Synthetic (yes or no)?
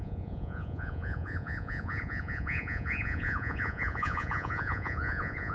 yes